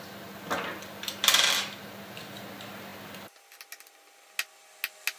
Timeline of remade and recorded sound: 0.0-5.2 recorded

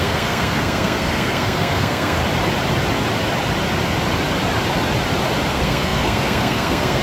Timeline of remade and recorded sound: 0.0-2.2 remade; 2.2-5.5 recorded; 5.5-7.0 remade